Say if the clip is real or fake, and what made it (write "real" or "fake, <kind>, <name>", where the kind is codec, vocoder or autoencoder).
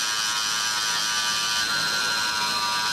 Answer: real